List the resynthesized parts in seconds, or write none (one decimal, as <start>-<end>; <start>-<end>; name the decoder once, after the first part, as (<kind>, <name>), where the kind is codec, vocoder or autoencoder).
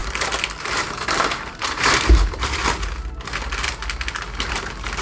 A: 0.6-2.6 (vocoder, BigVGAN v2); 4.5-5.0